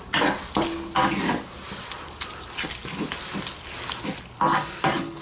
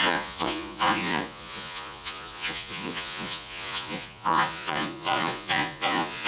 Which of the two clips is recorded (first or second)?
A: first